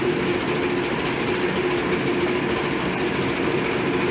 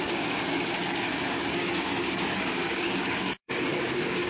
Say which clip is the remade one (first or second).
second